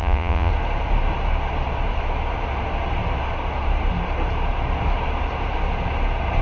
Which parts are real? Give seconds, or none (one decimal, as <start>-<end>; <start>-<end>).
0.5-6.4

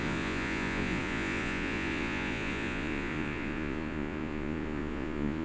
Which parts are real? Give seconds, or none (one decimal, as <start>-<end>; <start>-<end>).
none

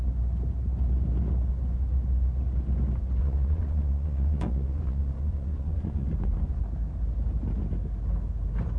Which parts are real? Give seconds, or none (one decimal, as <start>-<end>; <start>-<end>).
0.0-3.2; 6.6-8.8

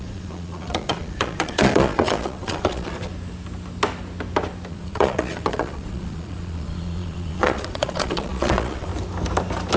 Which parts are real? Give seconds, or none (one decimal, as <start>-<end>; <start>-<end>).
3.1-4.7; 8.9-9.8

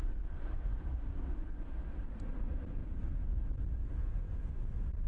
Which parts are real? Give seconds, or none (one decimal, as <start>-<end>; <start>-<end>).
0.0-2.8; 4.5-5.1

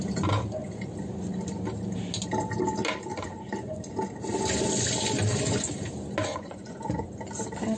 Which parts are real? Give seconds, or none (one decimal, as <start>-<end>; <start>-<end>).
0.0-3.1; 3.8-6.3; 7.1-7.8

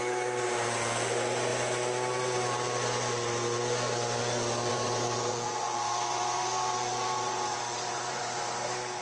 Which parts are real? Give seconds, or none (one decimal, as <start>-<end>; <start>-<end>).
0.0-4.7; 8.6-9.0

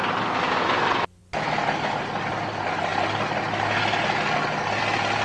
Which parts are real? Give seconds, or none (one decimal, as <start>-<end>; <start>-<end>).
0.0-5.2